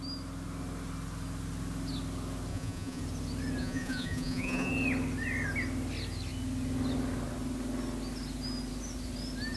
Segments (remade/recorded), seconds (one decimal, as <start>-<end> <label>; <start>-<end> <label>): 0.0-2.5 recorded; 2.5-3.0 remade; 3.0-3.6 recorded; 3.6-4.7 remade; 4.7-9.6 recorded